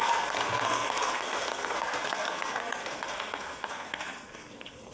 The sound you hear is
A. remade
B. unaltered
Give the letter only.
A